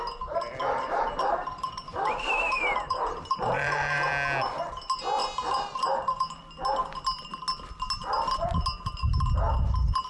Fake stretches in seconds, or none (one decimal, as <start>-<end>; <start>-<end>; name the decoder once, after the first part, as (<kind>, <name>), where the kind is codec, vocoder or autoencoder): 0.6-4.1 (vocoder, BigVGAN v2); 5.2-6.4